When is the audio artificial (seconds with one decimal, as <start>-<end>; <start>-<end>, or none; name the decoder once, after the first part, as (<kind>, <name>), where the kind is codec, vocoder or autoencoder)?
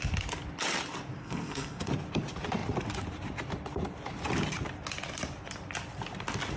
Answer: 1.2-1.9 (codec, SNAC)